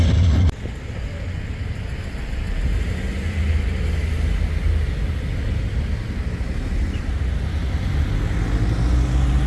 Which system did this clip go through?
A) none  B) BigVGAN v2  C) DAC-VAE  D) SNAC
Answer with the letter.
A